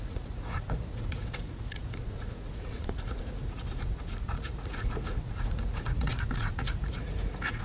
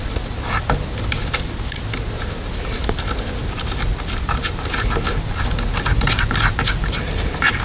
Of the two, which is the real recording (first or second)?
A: second